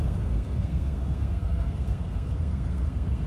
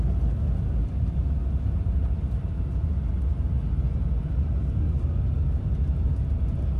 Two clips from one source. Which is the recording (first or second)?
second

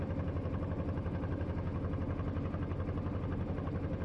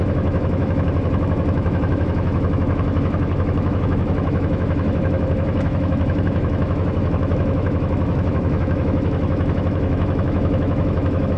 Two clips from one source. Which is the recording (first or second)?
first